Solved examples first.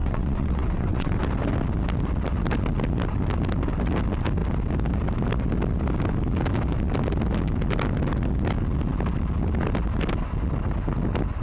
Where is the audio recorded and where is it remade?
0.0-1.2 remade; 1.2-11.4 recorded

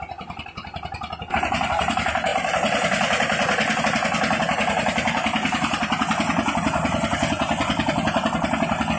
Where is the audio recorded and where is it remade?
0.0-9.0 recorded

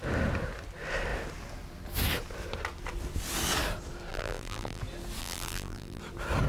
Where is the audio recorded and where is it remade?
0.0-4.1 recorded; 4.1-4.8 remade; 4.8-5.2 recorded; 5.2-6.0 remade; 6.0-6.5 recorded

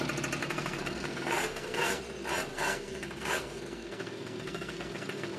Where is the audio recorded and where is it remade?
0.0-0.4 recorded; 0.4-2.0 remade; 2.0-2.5 recorded; 2.5-5.4 remade

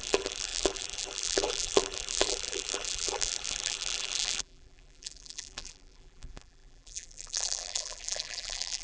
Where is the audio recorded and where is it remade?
0.0-8.8 remade

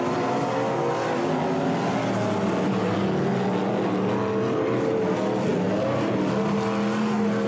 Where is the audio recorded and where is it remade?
0.0-7.5 recorded

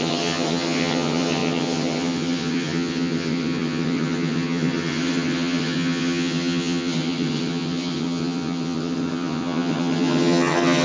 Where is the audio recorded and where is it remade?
0.0-10.8 remade

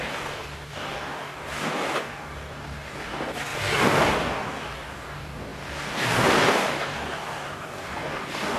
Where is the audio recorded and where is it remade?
0.0-8.6 remade